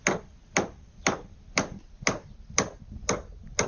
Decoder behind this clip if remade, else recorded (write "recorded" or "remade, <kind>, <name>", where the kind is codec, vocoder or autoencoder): recorded